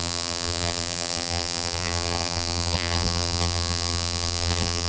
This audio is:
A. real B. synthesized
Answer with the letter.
B